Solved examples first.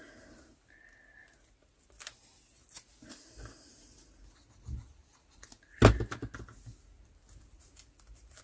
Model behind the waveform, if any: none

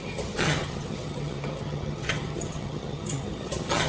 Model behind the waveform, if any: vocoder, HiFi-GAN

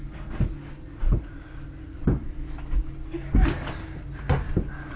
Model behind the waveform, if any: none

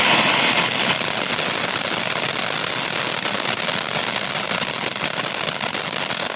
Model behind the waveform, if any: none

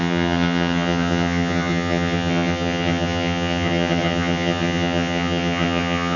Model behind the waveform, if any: vocoder, HiFi-GAN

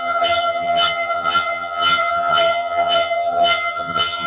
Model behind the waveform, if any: vocoder, HiFi-GAN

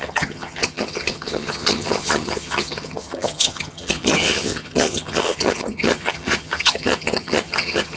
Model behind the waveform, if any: vocoder, HiFi-GAN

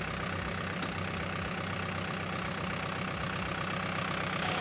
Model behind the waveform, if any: none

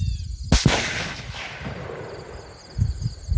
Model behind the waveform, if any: none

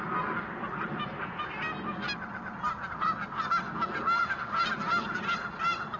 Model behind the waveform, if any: none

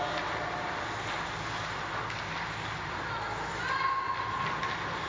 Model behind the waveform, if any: none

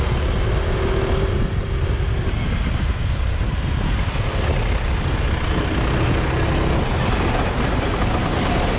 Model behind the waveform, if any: none